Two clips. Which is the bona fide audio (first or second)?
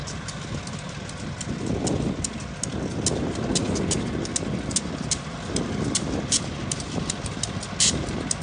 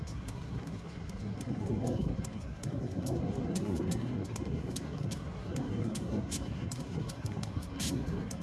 first